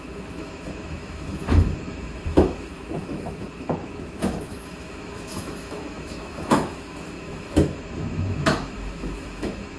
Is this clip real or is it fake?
fake